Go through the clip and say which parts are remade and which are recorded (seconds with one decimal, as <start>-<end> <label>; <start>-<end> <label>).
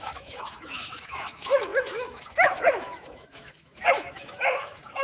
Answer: 0.0-5.0 remade